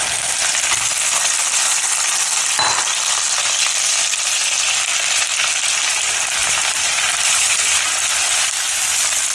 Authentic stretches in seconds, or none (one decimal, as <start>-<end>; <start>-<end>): 0.0-6.4; 7.8-9.3